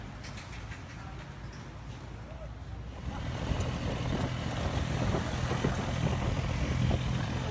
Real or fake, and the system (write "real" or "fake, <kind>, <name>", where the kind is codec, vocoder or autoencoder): real